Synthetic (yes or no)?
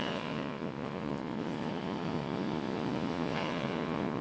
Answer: yes